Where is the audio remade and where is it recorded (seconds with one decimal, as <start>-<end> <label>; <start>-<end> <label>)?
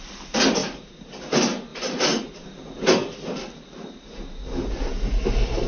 0.0-0.6 recorded; 0.6-1.2 remade; 1.2-1.7 recorded; 1.7-5.1 remade; 5.1-5.7 recorded